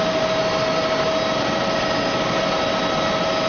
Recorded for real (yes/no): yes